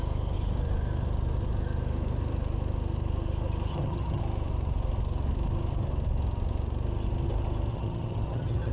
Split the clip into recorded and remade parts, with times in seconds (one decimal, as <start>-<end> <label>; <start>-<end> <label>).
0.0-3.7 recorded; 3.7-4.2 remade; 4.2-7.7 recorded; 7.7-8.7 remade